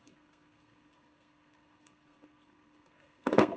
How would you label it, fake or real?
fake